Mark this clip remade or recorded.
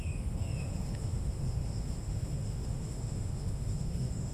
remade